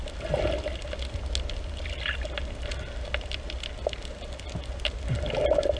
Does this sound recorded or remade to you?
recorded